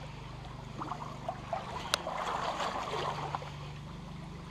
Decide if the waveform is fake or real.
real